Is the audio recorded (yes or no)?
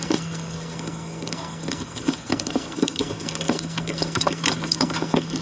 no